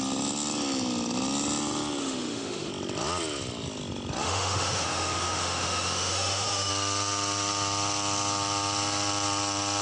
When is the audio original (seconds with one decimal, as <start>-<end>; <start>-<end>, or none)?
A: 0.0-2.0; 2.7-4.2; 6.7-9.8